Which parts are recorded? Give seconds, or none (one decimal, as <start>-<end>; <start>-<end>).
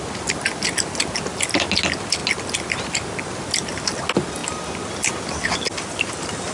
0.0-6.5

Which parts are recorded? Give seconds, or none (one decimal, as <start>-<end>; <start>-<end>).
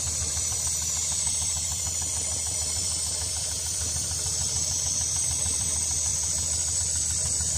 6.1-6.8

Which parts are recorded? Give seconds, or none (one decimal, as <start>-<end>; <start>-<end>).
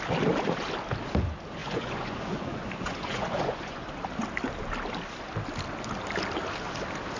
0.0-1.6; 3.9-7.2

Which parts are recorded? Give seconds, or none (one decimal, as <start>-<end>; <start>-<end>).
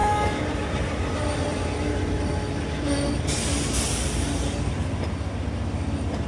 0.0-6.3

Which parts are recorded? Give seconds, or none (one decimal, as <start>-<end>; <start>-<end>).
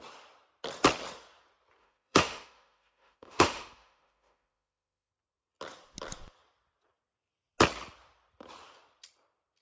0.0-1.8; 5.1-9.6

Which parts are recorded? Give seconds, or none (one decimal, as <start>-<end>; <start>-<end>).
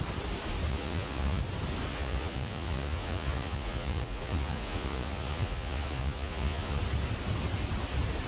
0.0-0.7; 1.4-1.9; 6.8-8.3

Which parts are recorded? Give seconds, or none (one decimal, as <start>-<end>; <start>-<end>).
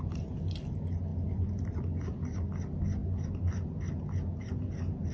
0.0-1.1; 2.5-5.1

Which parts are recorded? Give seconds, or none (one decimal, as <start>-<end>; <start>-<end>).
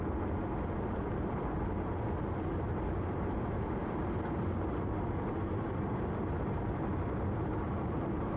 0.0-8.4